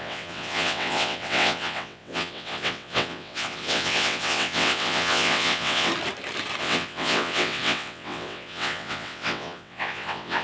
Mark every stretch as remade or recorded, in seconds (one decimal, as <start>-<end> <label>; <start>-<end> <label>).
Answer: 0.0-5.9 remade; 5.9-6.6 recorded; 6.6-10.4 remade